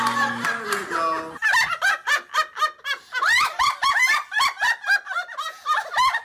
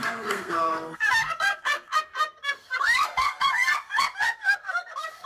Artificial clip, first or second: second